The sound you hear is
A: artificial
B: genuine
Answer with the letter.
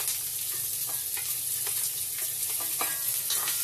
B